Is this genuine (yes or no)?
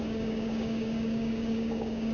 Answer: no